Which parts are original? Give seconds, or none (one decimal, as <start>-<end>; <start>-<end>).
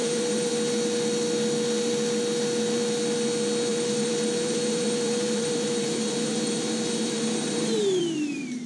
0.5-3.7